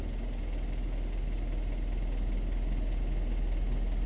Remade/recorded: recorded